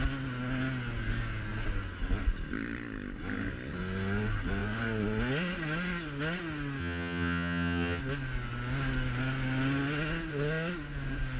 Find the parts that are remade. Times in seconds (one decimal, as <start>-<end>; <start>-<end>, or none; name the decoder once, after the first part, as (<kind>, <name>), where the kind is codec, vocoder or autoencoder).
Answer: 6.8-8.0 (vocoder, HiFi-GAN)